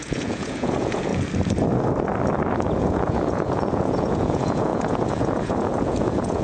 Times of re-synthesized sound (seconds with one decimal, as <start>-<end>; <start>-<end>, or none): 0.0-1.1; 2.5-6.4